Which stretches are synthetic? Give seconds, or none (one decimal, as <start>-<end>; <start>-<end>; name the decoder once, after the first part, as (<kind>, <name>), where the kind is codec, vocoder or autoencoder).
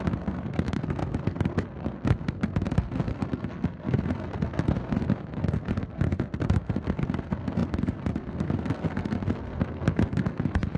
0.0-10.8 (codec, SNAC)